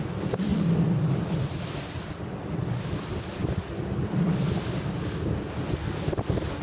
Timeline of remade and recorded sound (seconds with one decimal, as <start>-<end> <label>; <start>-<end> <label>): 0.0-0.5 recorded; 0.5-2.2 remade; 2.2-6.6 recorded